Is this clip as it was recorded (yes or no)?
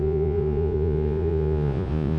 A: no